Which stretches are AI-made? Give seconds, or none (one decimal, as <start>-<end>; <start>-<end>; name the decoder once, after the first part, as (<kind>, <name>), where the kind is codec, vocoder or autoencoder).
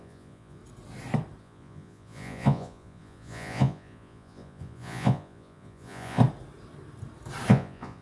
0.0-0.6 (vocoder, Vocos); 1.4-6.2; 7.5-8.0